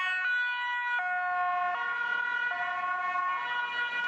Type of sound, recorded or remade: recorded